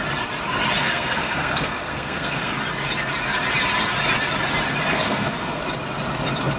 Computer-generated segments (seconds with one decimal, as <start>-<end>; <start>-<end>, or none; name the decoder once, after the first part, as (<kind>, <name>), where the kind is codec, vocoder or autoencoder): 0.8-2.5 (codec, SNAC); 4.9-5.6